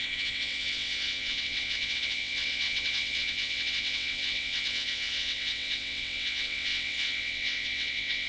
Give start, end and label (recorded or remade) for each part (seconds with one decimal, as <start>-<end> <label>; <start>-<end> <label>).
0.0-8.3 remade